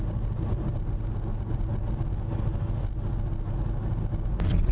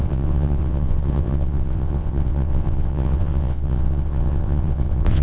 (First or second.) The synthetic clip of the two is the second